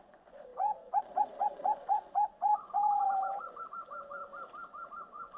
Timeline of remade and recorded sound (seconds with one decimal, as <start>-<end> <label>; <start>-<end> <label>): 0.0-4.2 remade; 4.2-4.9 recorded; 4.9-5.4 remade